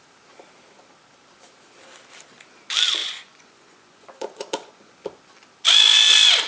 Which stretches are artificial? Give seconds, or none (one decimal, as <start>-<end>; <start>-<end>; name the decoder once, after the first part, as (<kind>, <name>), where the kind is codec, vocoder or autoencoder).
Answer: 3.0-4.9 (vocoder, Vocos)